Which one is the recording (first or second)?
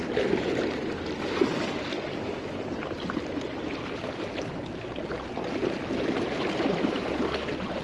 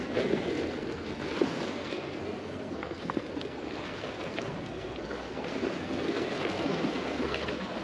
first